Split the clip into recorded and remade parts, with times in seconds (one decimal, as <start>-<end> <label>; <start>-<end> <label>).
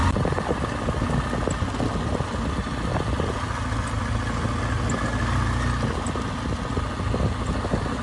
0.0-8.0 recorded